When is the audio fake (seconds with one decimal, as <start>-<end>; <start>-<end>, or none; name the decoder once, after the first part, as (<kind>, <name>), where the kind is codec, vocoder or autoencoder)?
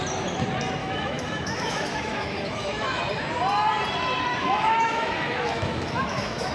0.8-3.0 (autoencoder, DAC-VAE); 4.3-6.5